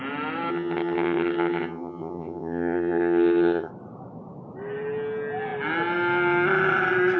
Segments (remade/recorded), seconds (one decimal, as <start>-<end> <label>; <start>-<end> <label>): 0.0-0.5 recorded; 0.5-3.7 remade; 3.7-7.2 recorded